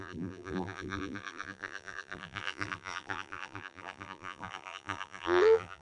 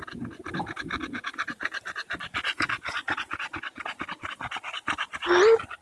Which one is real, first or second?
second